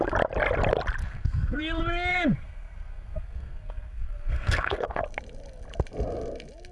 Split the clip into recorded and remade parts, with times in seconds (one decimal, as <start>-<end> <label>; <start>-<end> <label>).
0.0-1.0 recorded; 1.0-1.6 remade; 1.6-2.1 recorded; 2.1-5.0 remade; 5.0-6.7 recorded